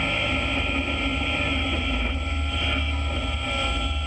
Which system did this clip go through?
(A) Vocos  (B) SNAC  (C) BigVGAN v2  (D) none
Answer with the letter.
D